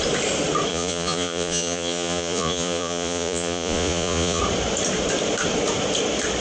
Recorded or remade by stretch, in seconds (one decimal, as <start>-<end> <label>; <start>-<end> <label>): 0.0-0.7 recorded; 0.7-4.4 remade; 4.4-6.4 recorded